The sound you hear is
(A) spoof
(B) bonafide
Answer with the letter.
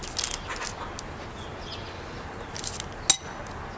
B